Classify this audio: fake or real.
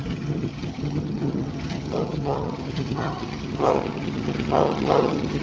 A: fake